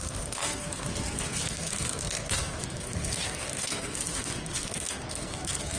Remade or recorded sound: remade